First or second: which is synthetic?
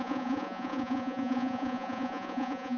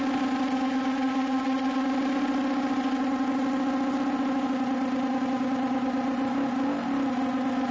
first